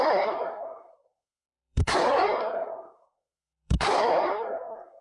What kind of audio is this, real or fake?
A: fake